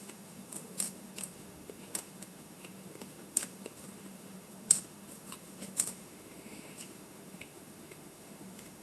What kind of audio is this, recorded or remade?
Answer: remade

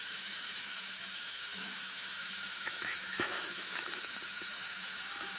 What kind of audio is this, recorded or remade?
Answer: remade